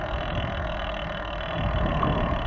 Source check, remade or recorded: recorded